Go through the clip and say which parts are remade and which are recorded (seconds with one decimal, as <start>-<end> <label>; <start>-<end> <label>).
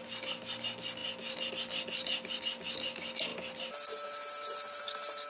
0.0-5.3 recorded